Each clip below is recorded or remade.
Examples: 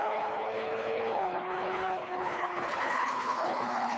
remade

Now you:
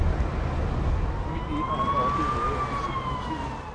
recorded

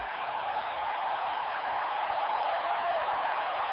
remade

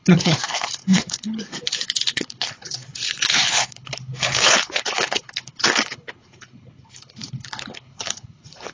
remade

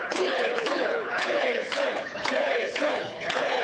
remade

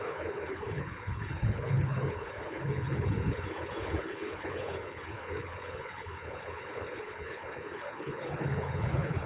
remade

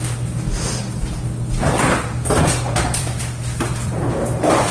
recorded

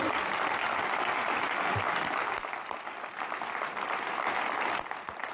recorded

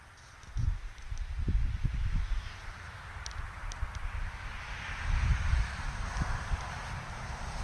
recorded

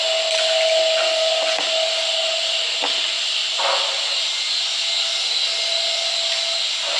recorded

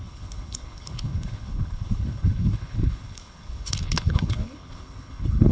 remade